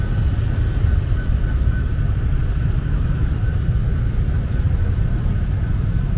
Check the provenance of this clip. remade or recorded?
recorded